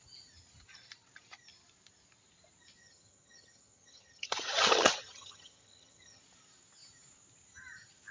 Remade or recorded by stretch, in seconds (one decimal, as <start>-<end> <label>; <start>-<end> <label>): 0.0-2.8 recorded; 2.8-6.2 remade; 6.2-8.1 recorded